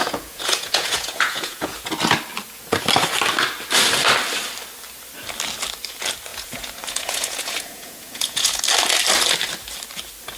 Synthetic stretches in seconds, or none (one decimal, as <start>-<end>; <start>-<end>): 0.0-1.9; 6.3-8.6